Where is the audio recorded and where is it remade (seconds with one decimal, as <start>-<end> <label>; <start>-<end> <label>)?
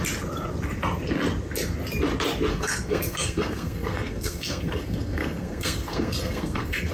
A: 0.0-2.5 recorded; 2.5-6.9 remade